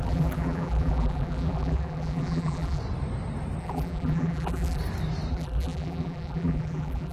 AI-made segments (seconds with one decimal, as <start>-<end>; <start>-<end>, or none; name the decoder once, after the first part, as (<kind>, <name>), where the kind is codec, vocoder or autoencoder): 0.0-2.8 (vocoder, BigVGAN v2); 3.6-4.8; 5.3-7.1